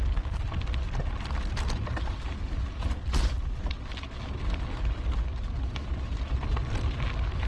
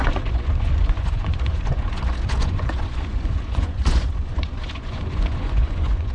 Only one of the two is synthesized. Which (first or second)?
second